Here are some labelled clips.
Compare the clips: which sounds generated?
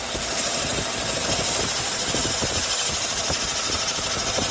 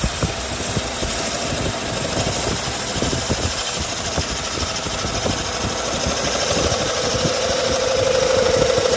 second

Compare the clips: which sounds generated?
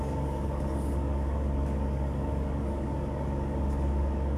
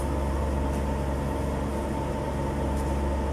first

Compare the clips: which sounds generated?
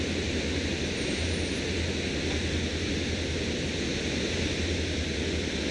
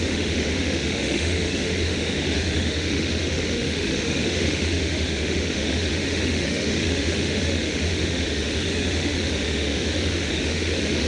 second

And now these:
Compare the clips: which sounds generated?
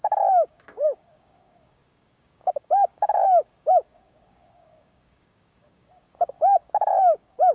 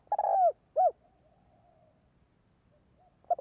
first